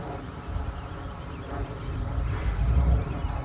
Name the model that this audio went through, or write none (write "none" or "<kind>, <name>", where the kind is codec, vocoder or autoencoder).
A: none